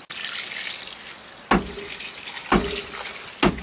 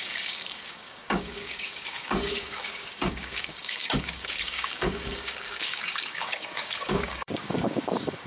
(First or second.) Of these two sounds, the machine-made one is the second